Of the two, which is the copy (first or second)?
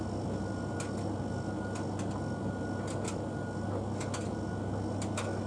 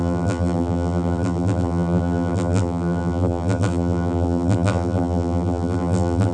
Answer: second